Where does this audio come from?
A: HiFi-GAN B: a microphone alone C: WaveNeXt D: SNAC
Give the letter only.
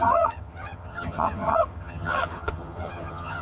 A